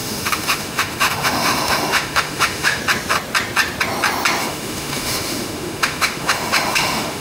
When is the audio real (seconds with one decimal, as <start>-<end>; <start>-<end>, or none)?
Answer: 2.8-4.4